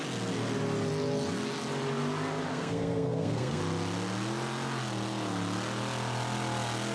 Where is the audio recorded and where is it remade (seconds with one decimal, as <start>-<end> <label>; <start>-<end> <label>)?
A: 0.0-2.5 recorded; 2.5-3.6 remade; 3.6-6.9 recorded